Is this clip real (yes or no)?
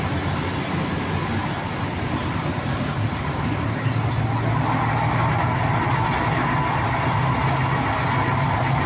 yes